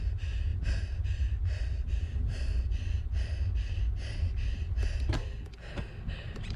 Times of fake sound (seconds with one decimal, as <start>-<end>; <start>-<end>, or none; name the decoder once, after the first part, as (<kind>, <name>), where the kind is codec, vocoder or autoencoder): 0.0-0.5 (vocoder, BigVGAN v2); 1.9-2.5; 6.1-6.6